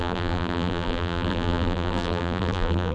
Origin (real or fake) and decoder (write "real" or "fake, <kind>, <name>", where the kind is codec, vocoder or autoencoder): fake, vocoder, BigVGAN v2